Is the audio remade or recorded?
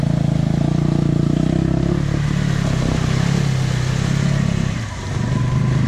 recorded